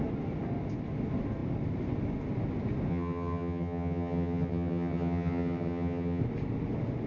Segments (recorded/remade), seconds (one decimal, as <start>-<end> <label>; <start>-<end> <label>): 0.0-2.9 recorded; 2.9-6.2 remade; 6.2-7.1 recorded